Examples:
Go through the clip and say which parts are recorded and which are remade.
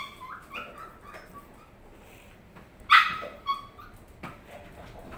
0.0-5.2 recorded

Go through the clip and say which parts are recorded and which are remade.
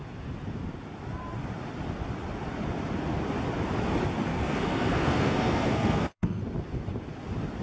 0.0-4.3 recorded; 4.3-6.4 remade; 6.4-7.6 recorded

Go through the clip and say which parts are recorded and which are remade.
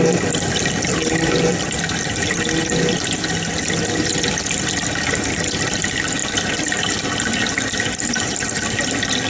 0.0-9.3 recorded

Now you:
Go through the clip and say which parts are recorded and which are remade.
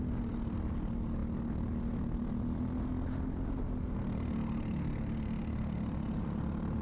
0.0-6.8 recorded